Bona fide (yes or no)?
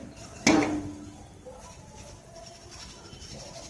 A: yes